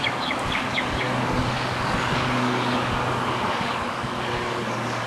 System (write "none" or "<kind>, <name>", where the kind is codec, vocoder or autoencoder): codec, DAC